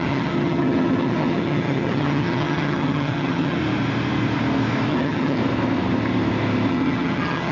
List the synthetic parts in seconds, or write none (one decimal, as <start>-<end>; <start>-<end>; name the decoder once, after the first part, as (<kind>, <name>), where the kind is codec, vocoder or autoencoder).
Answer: 0.0-3.6 (vocoder, HiFi-GAN); 4.9-5.4; 6.7-7.5